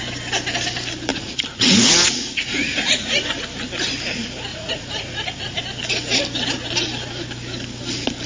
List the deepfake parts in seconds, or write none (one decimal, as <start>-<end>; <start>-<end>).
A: 1.1-3.4; 4.5-5.6